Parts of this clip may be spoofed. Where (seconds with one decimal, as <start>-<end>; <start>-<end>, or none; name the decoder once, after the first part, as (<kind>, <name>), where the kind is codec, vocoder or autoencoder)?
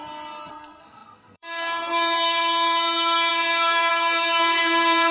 0.5-5.1 (codec, SNAC)